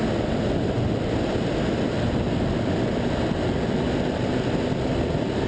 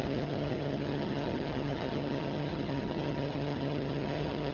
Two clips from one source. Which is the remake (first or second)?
second